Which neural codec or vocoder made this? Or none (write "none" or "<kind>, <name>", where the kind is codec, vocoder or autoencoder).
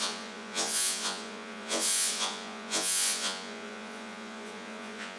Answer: vocoder, Vocos